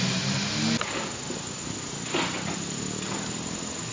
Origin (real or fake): real